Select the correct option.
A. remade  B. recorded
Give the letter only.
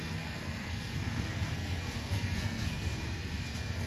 A